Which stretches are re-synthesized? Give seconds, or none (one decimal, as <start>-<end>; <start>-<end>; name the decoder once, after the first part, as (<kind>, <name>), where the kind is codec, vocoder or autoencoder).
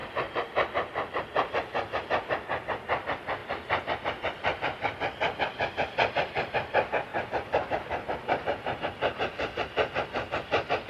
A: 0.0-2.1 (vocoder, BigVGAN v2); 7.1-8.8